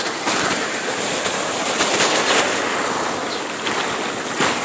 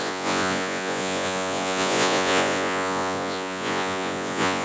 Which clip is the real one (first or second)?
first